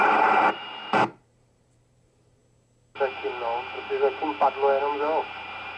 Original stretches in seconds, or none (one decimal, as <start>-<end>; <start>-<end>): 2.4-5.2

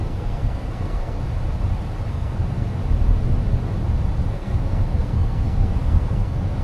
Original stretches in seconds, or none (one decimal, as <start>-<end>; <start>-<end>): 1.2-2.1; 2.8-4.3

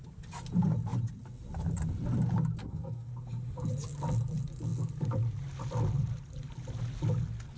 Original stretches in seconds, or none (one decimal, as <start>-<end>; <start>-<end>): 0.0-2.6; 3.1-7.6

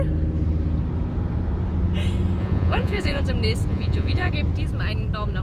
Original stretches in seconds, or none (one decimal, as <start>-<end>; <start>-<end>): 0.0-2.4; 3.2-3.7; 4.3-5.4

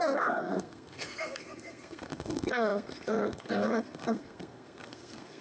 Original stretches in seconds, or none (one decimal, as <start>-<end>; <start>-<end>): none

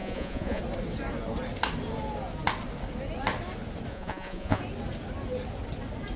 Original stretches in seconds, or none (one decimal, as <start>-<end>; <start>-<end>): 0.6-3.9; 4.6-6.2

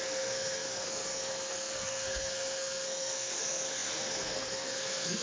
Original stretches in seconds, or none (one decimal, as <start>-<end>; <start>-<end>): none